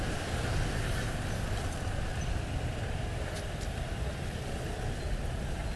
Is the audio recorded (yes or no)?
yes